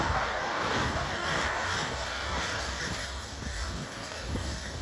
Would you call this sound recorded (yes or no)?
no